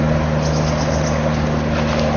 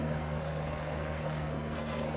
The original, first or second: first